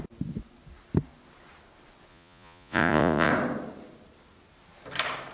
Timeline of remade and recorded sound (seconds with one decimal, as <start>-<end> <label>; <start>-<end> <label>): 0.0-2.1 recorded; 2.1-3.3 remade; 3.3-5.3 recorded